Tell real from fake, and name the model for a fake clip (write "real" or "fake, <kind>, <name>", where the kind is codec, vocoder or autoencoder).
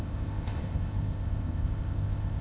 fake, codec, ZipCodec